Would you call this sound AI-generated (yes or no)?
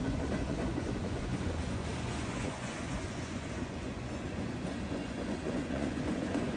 yes